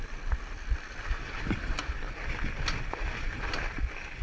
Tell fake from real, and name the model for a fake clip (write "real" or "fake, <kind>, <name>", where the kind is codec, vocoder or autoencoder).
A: real